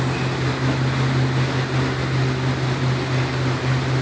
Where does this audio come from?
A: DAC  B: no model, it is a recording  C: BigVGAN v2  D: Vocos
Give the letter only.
B